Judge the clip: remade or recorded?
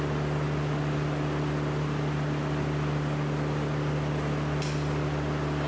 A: recorded